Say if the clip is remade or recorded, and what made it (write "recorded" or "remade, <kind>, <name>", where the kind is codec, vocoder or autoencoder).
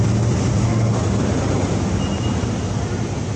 recorded